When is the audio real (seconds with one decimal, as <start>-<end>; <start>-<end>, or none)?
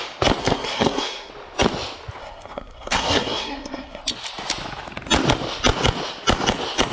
0.0-0.4; 1.3-2.2; 4.0-6.9